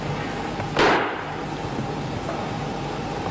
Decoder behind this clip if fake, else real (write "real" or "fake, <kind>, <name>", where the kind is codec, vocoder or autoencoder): real